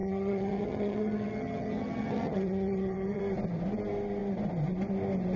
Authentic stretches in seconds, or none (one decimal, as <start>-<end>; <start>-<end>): 3.2-5.4